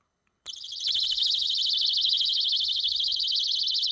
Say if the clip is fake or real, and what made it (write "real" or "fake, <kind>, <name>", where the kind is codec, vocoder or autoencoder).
fake, codec, HILCodec